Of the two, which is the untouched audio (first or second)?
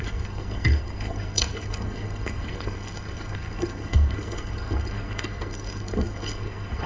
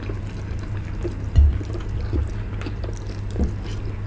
second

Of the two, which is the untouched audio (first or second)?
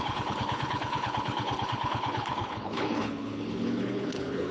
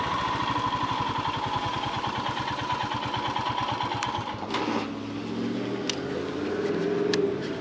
second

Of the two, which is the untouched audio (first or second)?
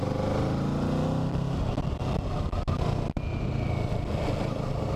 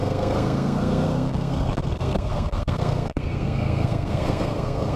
first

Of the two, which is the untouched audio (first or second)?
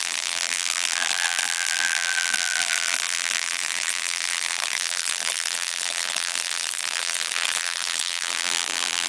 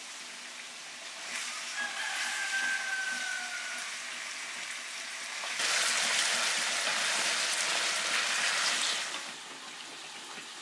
second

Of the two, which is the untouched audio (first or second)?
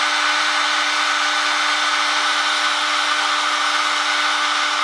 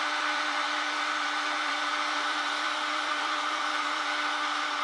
first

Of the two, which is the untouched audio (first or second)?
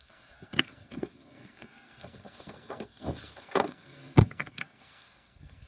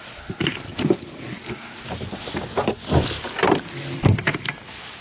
second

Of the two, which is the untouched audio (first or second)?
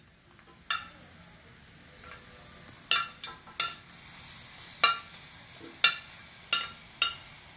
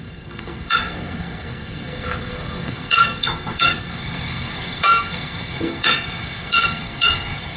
first